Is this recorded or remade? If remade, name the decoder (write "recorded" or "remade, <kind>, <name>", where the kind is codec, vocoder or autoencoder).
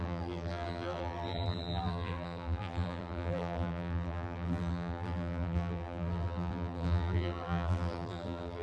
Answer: remade, vocoder, BigVGAN v2